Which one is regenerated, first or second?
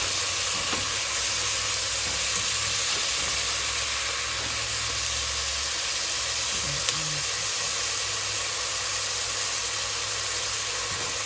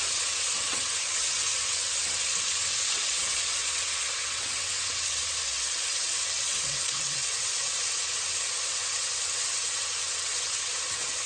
second